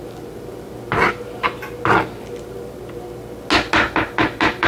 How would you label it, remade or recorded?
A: recorded